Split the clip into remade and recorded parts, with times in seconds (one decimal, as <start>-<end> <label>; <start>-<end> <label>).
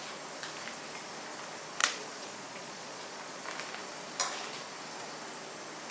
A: 0.0-1.8 recorded; 1.8-3.4 remade; 3.4-5.9 recorded